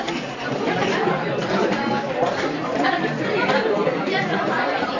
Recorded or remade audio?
recorded